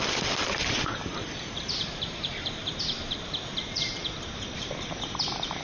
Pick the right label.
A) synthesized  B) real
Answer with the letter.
A